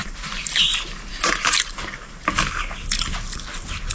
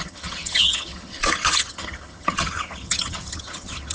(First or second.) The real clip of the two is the first